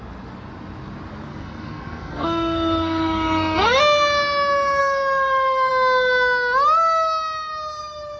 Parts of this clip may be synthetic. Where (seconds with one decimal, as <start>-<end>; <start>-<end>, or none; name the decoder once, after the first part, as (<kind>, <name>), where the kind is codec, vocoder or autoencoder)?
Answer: 1.3-3.8 (codec, SNAC); 4.8-5.7